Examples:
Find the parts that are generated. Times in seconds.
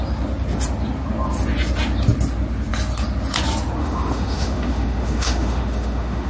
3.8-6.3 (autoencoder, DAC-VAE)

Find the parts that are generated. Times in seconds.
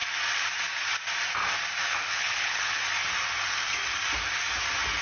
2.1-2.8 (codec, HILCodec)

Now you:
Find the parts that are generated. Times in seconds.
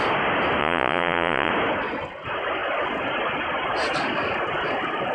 0.6-1.5 (vocoder, Vocos)